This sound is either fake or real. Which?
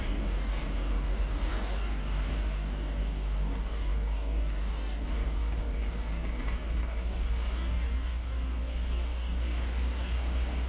fake